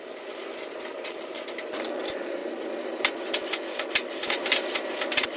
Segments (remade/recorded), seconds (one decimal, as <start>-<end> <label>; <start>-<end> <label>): 0.0-2.4 remade; 2.4-4.3 recorded; 4.3-5.4 remade